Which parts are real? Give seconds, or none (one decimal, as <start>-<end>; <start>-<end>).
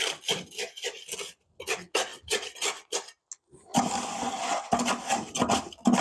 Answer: 0.0-6.0